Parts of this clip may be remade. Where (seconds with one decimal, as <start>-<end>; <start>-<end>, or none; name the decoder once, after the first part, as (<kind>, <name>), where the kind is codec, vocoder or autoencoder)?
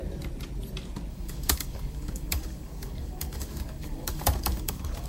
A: 1.1-5.1 (codec, DAC)